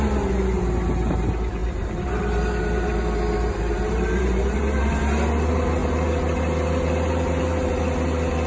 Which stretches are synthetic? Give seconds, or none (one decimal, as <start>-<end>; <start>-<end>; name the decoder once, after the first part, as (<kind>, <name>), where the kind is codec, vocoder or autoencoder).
1.6-4.9 (vocoder, BigVGAN v2)